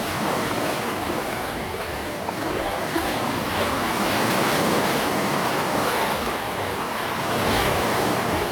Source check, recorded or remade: remade